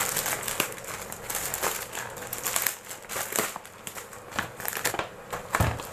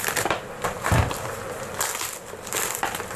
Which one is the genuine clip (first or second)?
first